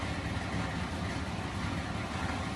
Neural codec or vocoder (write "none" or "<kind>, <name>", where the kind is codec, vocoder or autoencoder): none